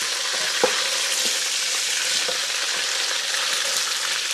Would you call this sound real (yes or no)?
yes